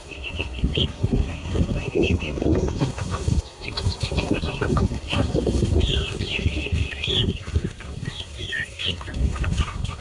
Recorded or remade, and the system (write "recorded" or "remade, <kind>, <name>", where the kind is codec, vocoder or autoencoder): remade, codec, SNAC